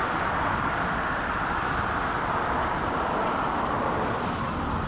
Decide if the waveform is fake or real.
real